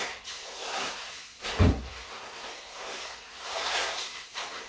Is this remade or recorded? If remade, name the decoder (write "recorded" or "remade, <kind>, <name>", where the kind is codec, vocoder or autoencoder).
remade, codec, SNAC